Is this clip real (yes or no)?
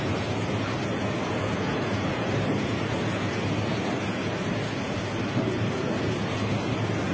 yes